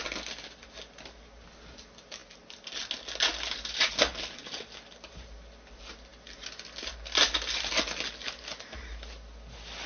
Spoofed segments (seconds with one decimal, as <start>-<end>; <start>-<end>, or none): none